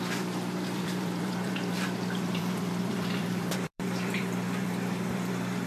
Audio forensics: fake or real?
fake